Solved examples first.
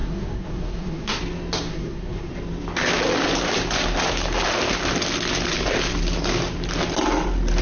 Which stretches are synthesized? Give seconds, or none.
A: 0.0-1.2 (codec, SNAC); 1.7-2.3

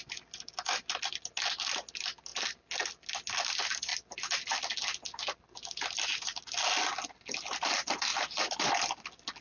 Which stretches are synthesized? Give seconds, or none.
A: none

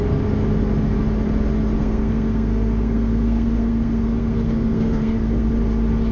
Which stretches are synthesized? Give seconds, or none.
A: 1.8-5.5 (codec, SNAC)

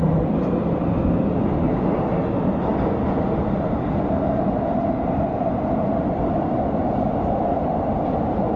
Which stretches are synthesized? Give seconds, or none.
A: none